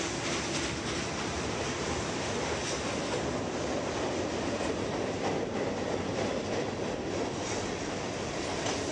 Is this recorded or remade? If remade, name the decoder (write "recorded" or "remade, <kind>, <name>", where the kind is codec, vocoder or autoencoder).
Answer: recorded